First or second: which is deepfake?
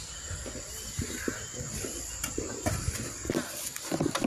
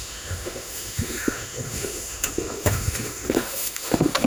second